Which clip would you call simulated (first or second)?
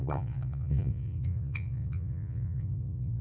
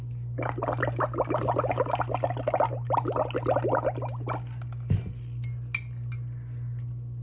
first